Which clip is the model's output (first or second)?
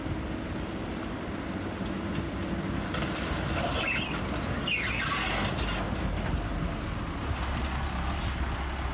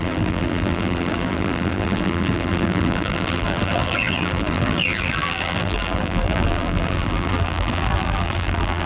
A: second